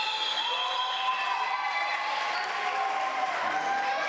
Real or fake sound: real